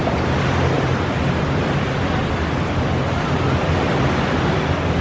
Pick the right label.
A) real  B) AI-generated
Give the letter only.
A